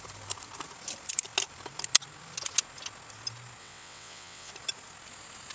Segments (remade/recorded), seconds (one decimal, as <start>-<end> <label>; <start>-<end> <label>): 0.0-3.6 recorded; 3.6-4.5 remade; 4.5-5.5 recorded